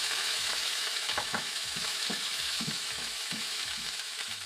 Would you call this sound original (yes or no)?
no